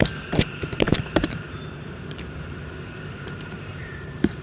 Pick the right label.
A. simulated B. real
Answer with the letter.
A